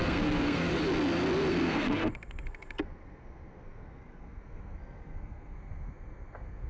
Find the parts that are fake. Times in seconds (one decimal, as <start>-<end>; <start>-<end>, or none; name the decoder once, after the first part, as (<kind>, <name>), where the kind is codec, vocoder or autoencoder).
0.0-0.7 (codec, SNAC); 1.5-6.7